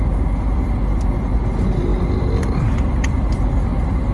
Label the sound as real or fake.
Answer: real